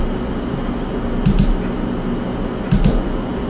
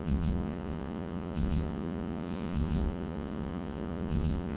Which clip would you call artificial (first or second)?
second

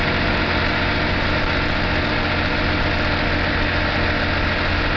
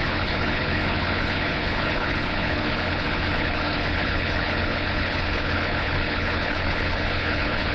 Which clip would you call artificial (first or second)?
second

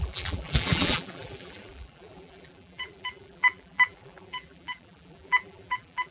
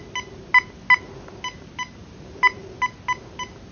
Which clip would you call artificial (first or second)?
first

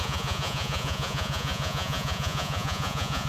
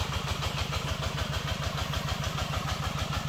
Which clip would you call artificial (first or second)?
first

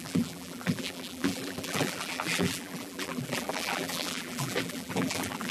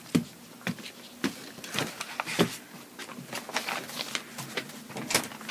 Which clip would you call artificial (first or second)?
first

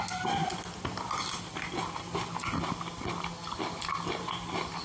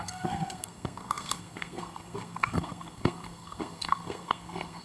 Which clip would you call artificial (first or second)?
second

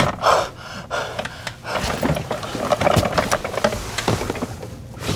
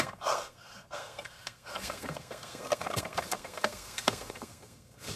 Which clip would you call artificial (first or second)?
second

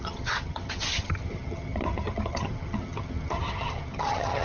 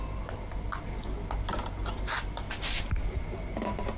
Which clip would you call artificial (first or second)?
first